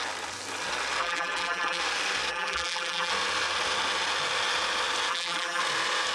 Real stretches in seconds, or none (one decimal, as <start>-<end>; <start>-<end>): 0.0-1.0; 1.8-2.3; 3.1-5.1; 5.6-6.1